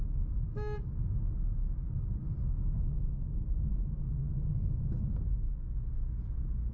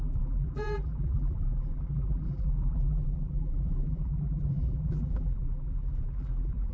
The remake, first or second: second